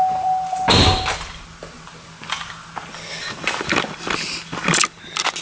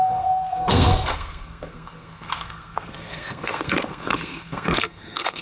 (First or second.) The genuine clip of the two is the first